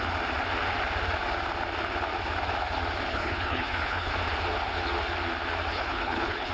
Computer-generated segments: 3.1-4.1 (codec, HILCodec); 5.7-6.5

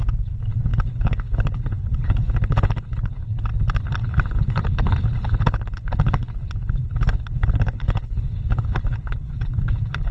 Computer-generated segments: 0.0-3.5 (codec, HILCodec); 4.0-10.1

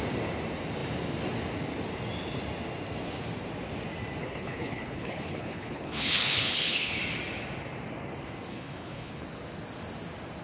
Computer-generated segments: 4.2-7.0 (codec, HILCodec); 8.5-9.2

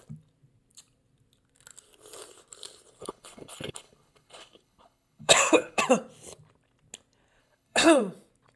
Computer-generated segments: 3.0-5.8 (codec, HILCodec); 7.4-8.0

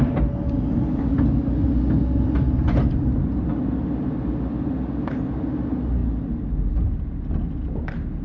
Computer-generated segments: none